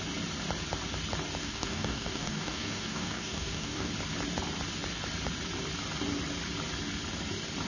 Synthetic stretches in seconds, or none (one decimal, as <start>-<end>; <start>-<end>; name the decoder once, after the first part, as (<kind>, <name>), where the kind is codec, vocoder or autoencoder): 1.4-3.9 (codec, DAC)